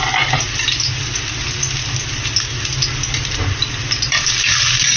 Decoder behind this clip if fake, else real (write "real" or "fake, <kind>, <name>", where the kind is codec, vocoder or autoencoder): real